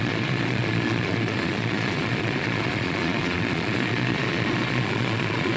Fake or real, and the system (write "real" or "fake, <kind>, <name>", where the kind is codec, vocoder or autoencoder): fake, vocoder, Vocos